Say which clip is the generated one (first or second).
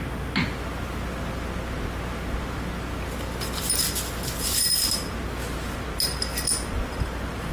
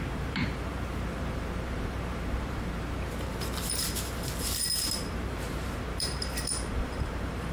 second